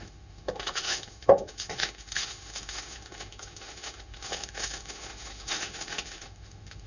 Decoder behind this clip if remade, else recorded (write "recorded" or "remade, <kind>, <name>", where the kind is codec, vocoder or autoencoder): remade, autoencoder, DAC-VAE